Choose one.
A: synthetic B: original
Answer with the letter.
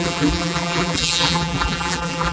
A